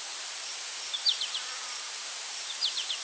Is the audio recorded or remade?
remade